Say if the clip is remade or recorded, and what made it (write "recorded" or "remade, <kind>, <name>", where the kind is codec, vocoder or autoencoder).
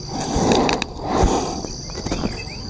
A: recorded